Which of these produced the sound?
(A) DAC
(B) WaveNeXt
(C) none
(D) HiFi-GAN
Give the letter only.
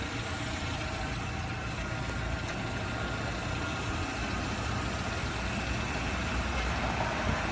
C